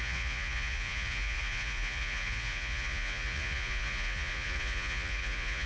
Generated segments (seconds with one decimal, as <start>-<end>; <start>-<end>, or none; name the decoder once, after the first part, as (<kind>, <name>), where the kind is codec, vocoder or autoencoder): 0.0-5.7 (vocoder, Vocos)